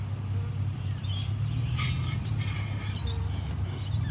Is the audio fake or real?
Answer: real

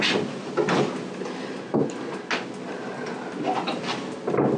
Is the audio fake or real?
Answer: real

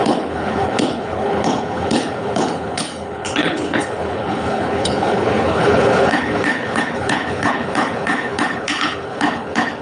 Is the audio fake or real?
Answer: fake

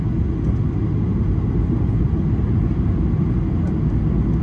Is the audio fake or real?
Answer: real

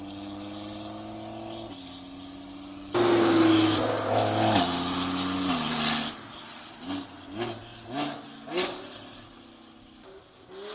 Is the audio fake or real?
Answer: real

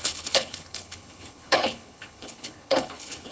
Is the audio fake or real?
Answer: fake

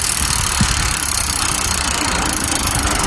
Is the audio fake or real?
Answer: real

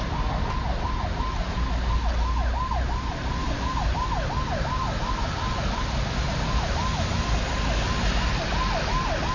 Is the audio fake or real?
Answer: real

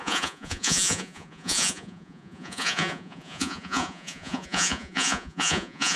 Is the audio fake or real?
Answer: fake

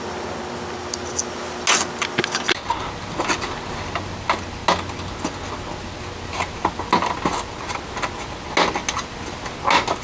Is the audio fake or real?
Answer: real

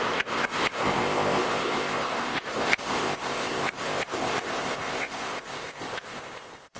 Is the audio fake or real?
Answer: fake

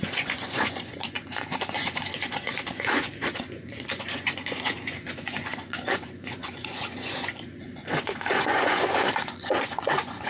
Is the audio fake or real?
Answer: fake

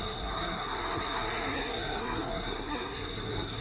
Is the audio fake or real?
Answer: fake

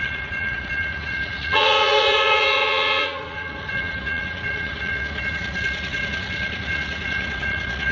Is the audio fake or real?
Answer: fake